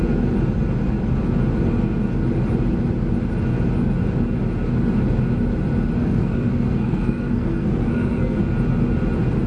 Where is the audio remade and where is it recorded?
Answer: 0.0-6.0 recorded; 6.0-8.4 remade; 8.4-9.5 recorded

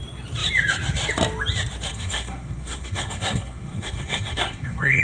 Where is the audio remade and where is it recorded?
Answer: 0.0-1.9 recorded; 1.9-5.0 remade

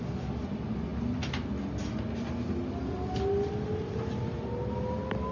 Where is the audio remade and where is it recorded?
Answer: 0.0-5.3 recorded